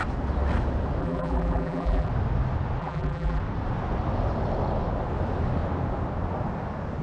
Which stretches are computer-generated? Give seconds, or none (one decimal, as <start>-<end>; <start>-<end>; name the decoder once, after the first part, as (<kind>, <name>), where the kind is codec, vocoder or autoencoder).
1.0-2.1 (vocoder, BigVGAN v2); 2.8-3.4